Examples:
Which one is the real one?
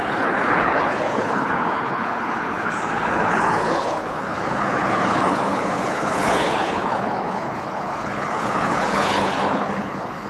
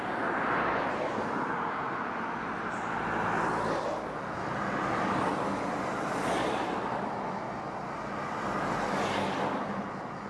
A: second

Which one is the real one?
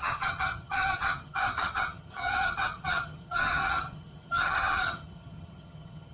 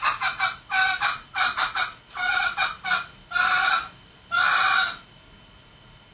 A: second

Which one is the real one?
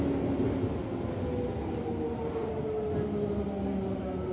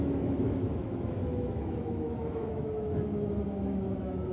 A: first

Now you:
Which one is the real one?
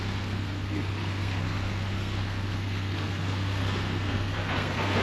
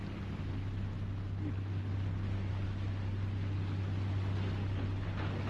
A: second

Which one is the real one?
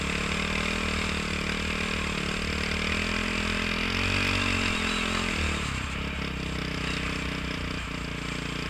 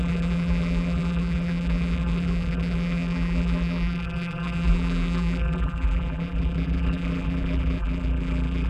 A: first